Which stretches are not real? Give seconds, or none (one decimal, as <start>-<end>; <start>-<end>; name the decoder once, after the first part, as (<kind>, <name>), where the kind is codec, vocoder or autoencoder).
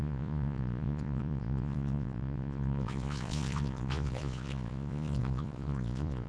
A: 0.0-6.3 (vocoder, Vocos)